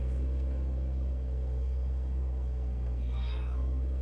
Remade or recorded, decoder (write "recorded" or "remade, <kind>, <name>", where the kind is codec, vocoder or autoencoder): remade, codec, SNAC